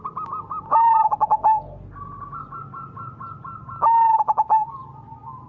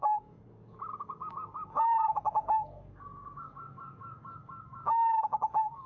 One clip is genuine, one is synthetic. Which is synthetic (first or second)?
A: second